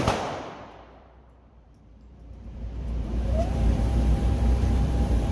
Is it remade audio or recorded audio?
remade